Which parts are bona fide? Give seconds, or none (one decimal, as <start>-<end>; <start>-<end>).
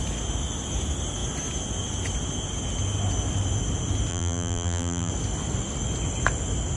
0.0-4.1; 5.1-6.8